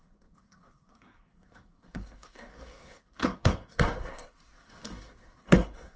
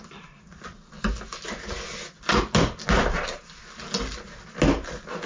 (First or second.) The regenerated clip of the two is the first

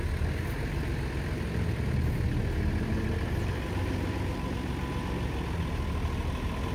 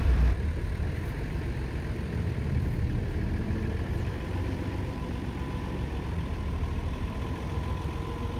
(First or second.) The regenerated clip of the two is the second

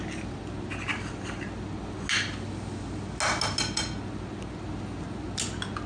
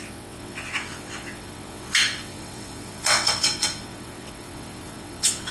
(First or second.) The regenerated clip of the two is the second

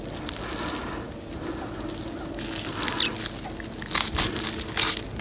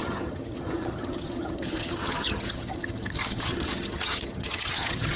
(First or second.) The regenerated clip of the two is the second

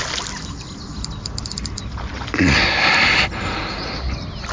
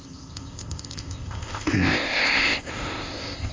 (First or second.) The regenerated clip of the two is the second